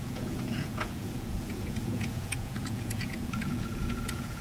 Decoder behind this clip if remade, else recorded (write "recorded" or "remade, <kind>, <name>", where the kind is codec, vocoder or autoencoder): remade, vocoder, Vocos